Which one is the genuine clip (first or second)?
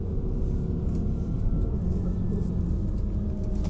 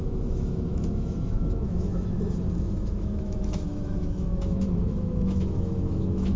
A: first